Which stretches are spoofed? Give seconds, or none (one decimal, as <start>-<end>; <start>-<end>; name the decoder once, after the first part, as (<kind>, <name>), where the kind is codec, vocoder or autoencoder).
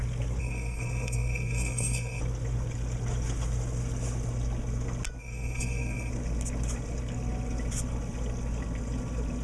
0.4-2.2 (codec, SNAC); 5.2-6.1